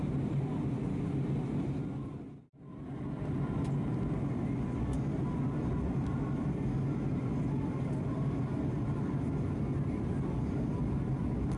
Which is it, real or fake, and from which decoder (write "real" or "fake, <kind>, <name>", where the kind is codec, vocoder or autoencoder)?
real